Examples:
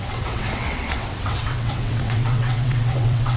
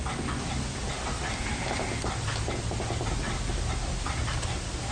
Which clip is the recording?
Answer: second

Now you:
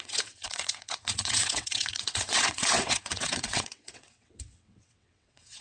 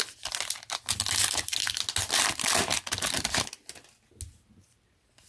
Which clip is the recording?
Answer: second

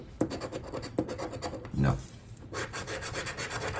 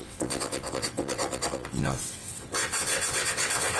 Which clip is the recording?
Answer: first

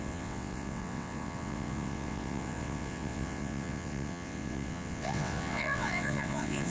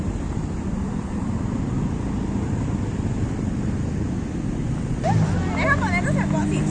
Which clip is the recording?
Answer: second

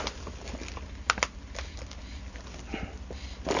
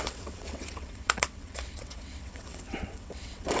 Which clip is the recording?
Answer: first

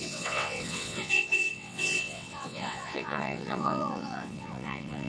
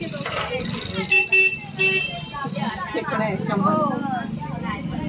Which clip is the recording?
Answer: second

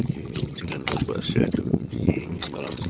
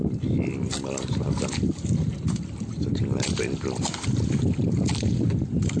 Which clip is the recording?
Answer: second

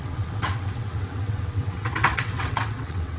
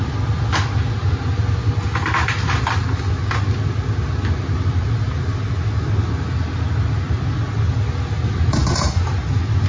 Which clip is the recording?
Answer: second